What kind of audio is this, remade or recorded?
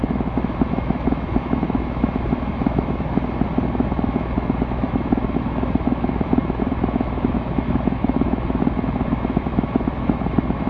remade